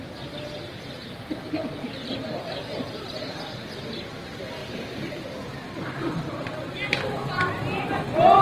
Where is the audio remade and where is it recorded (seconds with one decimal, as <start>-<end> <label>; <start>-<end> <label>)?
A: 0.0-4.6 recorded; 4.6-6.0 remade; 6.0-8.4 recorded